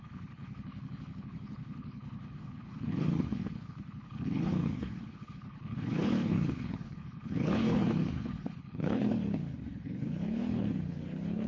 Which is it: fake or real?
fake